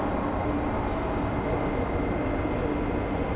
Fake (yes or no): no